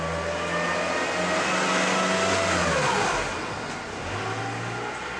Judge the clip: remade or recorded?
recorded